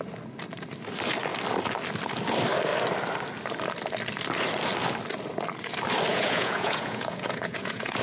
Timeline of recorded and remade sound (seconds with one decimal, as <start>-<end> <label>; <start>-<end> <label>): 0.0-6.1 recorded; 6.1-8.0 remade